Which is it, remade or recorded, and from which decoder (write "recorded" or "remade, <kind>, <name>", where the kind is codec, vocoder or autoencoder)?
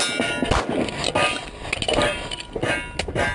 recorded